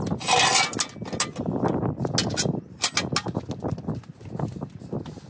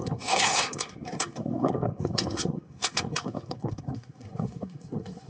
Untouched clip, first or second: first